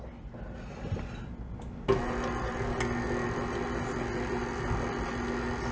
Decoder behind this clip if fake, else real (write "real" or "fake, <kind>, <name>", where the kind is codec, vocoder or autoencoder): real